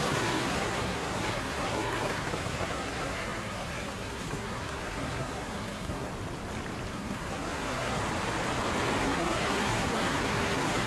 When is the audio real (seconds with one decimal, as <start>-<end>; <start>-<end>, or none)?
6.1-6.9; 8.0-9.0